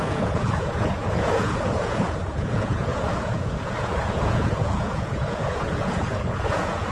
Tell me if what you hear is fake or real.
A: fake